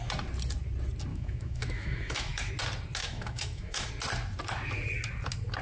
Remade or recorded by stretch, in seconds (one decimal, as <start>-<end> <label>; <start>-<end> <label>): 0.0-1.1 recorded; 1.1-2.5 remade; 2.5-3.0 recorded; 3.0-3.9 remade; 3.9-5.6 recorded